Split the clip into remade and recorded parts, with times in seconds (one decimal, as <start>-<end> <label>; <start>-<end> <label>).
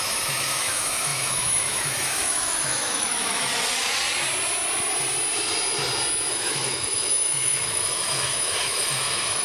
0.0-3.5 remade; 3.5-6.3 recorded; 6.3-9.4 remade